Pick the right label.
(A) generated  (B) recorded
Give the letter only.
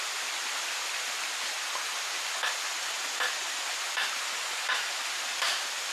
B